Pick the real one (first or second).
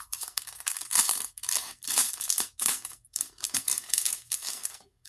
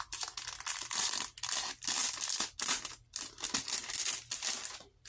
second